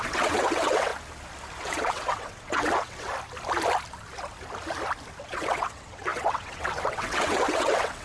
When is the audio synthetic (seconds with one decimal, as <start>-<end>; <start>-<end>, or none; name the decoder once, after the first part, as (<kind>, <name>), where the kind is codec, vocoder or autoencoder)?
0.0-0.9 (vocoder, WaveNeXt); 1.6-3.1; 5.2-8.0